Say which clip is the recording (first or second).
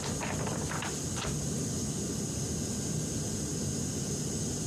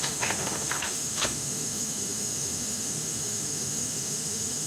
first